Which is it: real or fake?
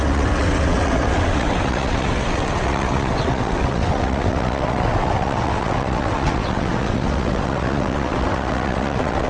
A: fake